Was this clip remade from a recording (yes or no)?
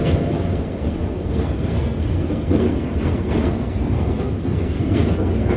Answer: yes